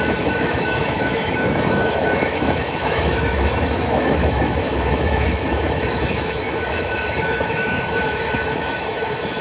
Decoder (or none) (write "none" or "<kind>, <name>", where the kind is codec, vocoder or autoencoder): autoencoder, DAC-VAE